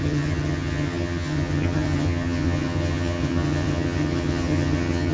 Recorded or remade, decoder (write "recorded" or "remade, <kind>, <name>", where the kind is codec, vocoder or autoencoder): remade, vocoder, HiFi-GAN